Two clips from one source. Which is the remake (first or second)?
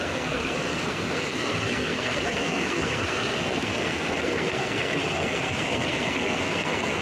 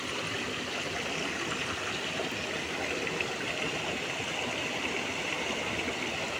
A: first